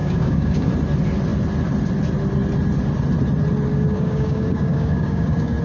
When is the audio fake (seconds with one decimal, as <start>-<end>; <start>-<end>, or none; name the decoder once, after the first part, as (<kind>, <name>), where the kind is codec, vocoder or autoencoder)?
0.0-0.7 (codec, DAC); 3.7-5.6